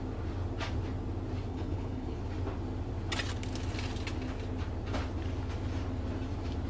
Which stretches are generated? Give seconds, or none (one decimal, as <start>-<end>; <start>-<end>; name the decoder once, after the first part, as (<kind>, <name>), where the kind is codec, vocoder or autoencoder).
1.5-2.2 (codec, HILCodec)